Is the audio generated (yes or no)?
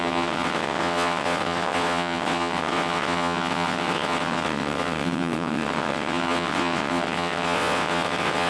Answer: yes